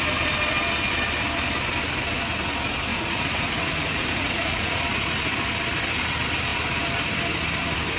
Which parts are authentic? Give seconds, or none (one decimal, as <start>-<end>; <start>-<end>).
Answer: 0.0-2.9; 4.8-8.0